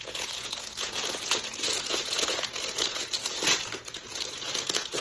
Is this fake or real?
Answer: fake